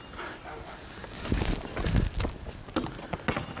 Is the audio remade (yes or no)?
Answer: no